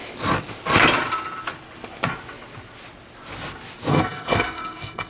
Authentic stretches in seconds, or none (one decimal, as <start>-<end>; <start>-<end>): 0.0-3.9